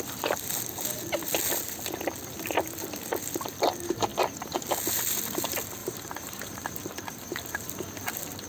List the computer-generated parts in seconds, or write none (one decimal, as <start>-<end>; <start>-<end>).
5.8-7.4